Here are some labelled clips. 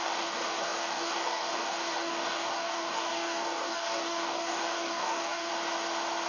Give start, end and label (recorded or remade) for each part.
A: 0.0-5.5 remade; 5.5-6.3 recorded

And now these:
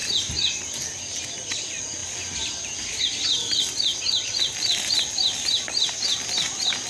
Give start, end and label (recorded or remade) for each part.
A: 0.0-1.2 remade; 1.2-6.9 recorded

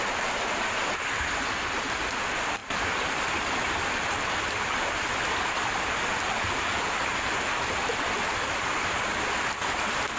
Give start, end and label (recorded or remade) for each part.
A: 0.0-2.6 recorded; 2.6-5.1 remade; 5.1-10.2 recorded

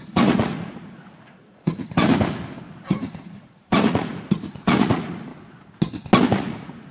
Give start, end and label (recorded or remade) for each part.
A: 0.0-2.1 remade; 2.1-2.8 recorded; 2.8-5.3 remade; 5.3-6.2 recorded; 6.2-6.9 remade

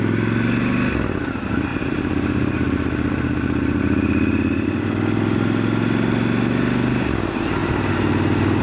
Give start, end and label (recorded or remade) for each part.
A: 0.0-1.7 recorded; 1.7-3.8 remade; 3.8-8.6 recorded

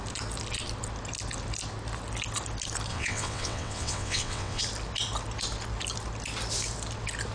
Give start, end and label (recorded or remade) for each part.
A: 0.0-2.9 recorded; 2.9-4.6 remade; 4.6-7.3 recorded

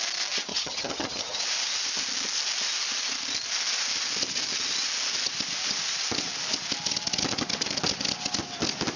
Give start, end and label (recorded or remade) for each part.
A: 0.0-0.5 recorded; 0.5-1.4 remade; 1.4-9.0 recorded